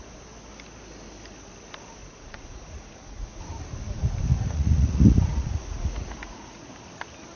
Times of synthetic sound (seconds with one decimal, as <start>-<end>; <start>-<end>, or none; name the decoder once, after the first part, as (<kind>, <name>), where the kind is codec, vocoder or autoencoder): 2.0-3.4 (vocoder, Vocos); 4.3-6.7